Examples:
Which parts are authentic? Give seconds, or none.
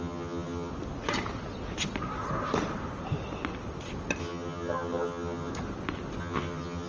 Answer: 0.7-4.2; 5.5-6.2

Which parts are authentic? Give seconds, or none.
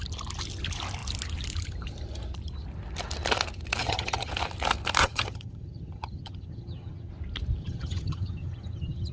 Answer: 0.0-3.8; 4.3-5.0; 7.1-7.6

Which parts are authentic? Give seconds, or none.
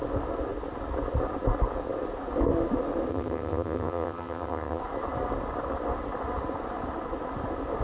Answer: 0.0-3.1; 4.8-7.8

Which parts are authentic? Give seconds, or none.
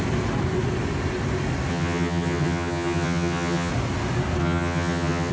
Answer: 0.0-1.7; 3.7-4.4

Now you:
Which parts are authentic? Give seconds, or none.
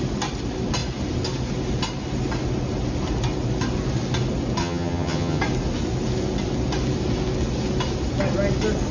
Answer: 0.0-4.6; 5.4-8.9